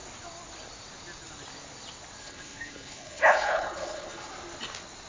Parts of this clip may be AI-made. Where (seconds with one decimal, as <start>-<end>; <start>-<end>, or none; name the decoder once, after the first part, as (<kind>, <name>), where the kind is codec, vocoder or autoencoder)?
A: 2.2-4.3 (codec, HILCodec)